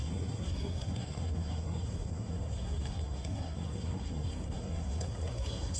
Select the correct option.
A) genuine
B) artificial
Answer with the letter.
B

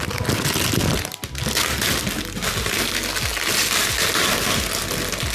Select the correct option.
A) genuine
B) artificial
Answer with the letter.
A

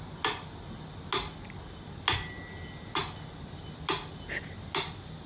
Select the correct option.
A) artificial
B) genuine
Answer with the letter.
B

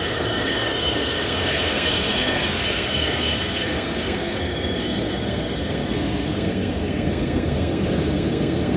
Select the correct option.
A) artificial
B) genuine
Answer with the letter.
A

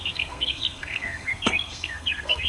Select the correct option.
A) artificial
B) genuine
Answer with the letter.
A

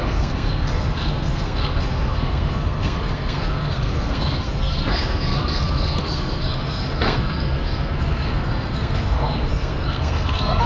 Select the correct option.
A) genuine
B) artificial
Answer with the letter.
B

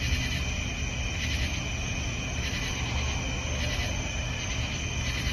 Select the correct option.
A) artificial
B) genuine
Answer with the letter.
B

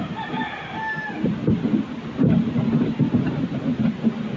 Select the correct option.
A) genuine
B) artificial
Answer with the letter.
A